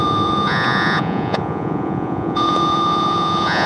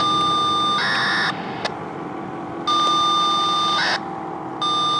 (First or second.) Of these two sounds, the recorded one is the second